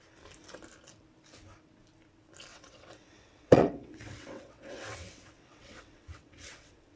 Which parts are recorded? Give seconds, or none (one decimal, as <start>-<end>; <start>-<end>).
0.0-2.5